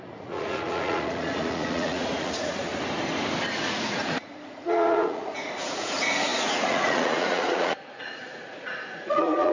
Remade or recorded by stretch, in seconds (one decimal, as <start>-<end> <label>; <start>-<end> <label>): 0.0-2.7 remade; 2.7-3.6 recorded; 3.6-9.5 remade